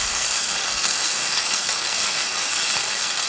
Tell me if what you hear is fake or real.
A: fake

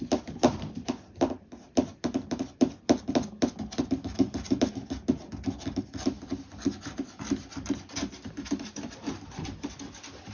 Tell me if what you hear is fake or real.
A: real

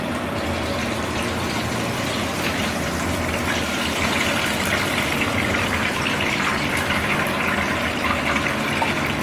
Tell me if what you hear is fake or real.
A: fake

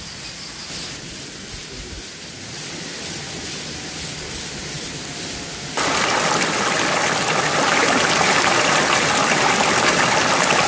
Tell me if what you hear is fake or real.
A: fake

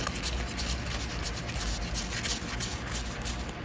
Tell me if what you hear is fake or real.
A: real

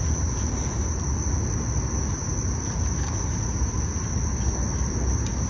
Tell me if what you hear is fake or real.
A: real